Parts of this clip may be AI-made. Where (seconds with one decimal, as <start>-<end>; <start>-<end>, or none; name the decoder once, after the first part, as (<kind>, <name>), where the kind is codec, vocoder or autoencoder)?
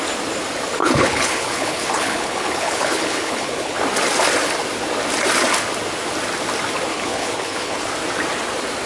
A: 0.8-3.8 (codec, HILCodec); 6.9-7.8